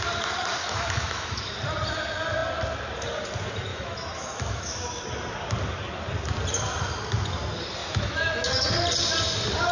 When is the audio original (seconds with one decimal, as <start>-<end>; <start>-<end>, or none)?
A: 0.0-0.6; 1.5-3.7; 5.0-7.8; 8.7-9.7